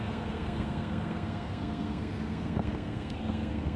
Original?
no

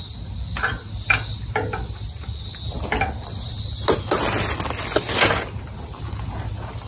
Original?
yes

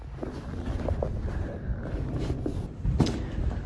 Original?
yes